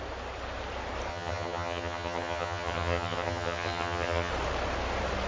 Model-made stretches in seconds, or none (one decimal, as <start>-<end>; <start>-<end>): 1.1-4.3